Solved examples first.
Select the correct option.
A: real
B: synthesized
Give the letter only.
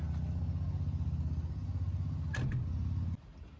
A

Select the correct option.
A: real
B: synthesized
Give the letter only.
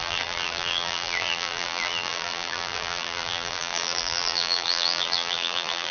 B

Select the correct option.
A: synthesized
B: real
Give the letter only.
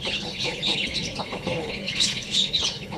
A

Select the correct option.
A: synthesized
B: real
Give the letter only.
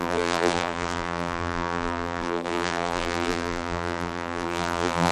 A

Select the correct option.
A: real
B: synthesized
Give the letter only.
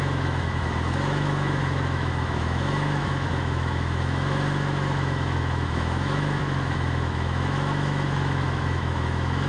B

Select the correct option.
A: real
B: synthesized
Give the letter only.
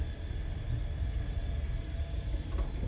A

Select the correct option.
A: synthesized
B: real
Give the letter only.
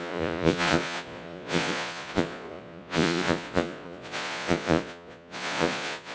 A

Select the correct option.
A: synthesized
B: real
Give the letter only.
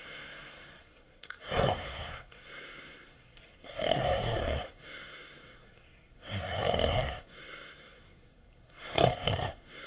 A